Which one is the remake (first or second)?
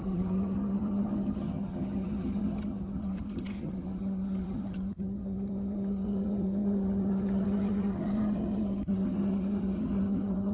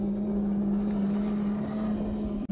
first